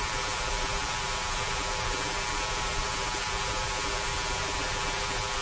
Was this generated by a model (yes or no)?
yes